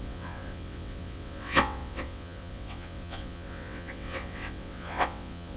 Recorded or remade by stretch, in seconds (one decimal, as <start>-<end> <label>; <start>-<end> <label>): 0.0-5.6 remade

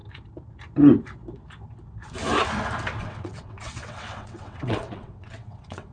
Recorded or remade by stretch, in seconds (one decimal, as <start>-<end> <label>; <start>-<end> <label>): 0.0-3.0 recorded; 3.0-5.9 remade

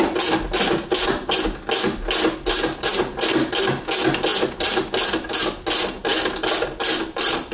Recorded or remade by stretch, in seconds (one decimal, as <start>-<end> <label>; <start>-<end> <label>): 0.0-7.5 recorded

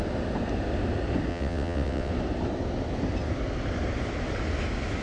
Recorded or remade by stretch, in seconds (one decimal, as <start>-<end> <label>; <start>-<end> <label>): 0.0-1.3 recorded; 1.3-2.1 remade; 2.1-5.0 recorded